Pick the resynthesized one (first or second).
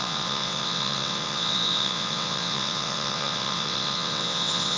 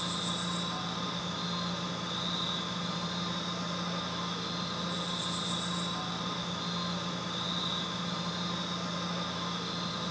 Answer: first